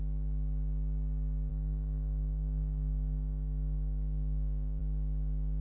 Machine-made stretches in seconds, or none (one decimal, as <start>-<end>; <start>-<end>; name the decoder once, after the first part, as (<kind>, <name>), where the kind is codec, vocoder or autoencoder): 1.5-4.8 (codec, DAC)